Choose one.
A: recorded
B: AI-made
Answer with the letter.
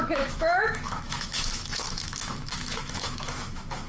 B